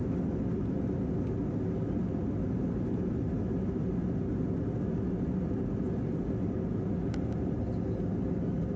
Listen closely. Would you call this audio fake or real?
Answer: real